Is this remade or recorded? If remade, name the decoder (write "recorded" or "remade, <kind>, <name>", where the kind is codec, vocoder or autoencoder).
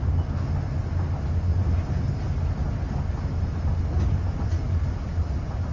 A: recorded